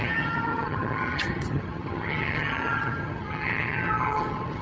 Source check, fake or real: fake